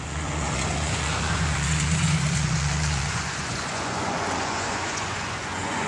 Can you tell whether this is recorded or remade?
remade